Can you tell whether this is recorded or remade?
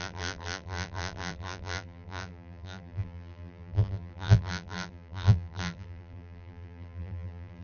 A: remade